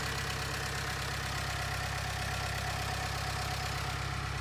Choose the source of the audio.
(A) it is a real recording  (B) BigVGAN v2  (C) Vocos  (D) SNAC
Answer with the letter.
A